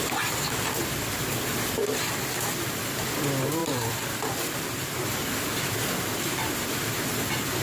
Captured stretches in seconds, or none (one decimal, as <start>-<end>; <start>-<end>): 0.0-1.8; 2.8-3.6; 6.7-7.6